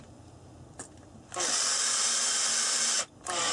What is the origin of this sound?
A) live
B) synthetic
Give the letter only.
A